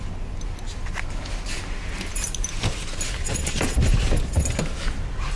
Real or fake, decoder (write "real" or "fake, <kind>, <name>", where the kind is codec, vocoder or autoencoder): real